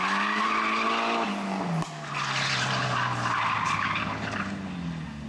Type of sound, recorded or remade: recorded